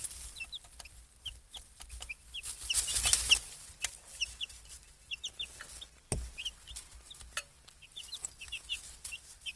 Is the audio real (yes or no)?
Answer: yes